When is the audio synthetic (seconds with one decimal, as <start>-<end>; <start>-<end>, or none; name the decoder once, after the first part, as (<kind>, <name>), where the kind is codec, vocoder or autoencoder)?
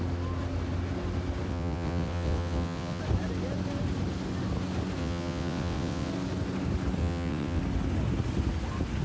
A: 1.5-3.0 (vocoder, WaveNeXt); 5.0-6.1; 7.0-7.6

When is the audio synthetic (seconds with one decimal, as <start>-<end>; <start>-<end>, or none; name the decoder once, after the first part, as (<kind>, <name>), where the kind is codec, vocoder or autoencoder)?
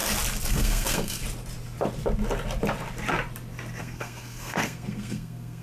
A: 0.5-1.2 (codec, SNAC); 3.8-5.6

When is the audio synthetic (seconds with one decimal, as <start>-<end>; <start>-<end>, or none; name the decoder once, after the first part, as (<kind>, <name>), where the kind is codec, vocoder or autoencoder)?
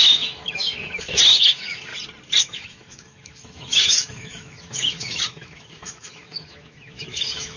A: 0.0-1.9 (autoencoder, DAC-VAE); 2.4-7.6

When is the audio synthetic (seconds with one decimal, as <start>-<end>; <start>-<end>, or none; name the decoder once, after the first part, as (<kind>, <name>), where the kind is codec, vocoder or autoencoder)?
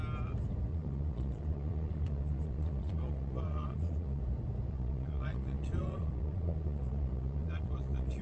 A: 0.7-4.2 (vocoder, Vocos); 4.7-8.2